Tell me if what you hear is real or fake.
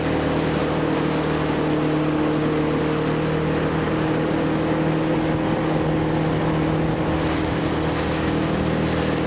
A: real